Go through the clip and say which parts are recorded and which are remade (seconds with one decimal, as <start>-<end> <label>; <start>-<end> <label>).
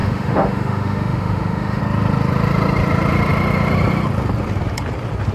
0.0-1.8 remade; 1.8-5.3 recorded